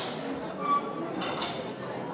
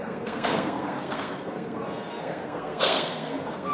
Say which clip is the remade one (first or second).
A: second